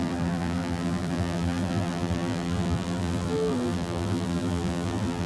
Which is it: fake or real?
fake